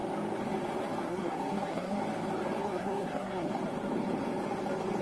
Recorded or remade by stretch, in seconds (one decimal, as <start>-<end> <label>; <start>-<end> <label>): 0.0-1.0 recorded; 1.0-2.0 remade; 2.0-2.6 recorded; 2.6-3.5 remade; 3.5-5.0 recorded

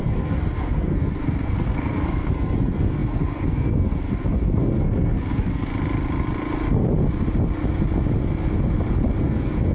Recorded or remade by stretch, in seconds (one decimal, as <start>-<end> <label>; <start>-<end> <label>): 0.0-5.7 remade; 5.7-9.2 recorded; 9.2-9.7 remade

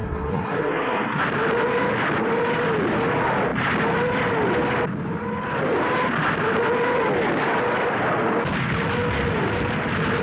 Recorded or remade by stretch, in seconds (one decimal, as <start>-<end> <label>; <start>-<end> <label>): 0.0-1.2 remade; 1.2-10.2 recorded

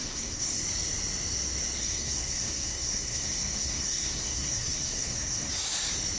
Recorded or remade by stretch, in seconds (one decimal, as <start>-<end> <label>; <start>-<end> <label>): 0.0-0.6 remade; 0.6-1.8 recorded; 1.8-5.5 remade; 5.5-6.2 recorded

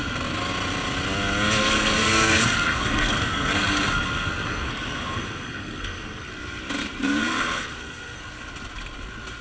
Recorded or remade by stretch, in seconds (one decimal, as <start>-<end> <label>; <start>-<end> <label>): 0.0-1.6 recorded; 1.6-6.3 remade; 6.3-7.2 recorded; 7.2-8.2 remade; 8.2-9.4 recorded

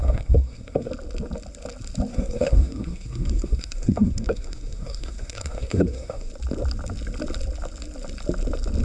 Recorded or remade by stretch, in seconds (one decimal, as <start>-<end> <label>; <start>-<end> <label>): 0.0-0.9 remade; 0.9-2.1 recorded; 2.1-6.3 remade; 6.3-8.8 recorded